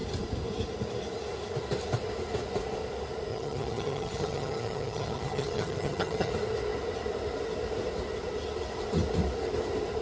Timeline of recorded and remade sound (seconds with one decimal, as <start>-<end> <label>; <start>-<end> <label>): 0.0-3.3 recorded; 3.3-6.3 remade; 6.3-10.0 recorded